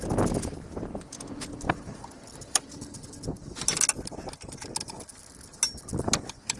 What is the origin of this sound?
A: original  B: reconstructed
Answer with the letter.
A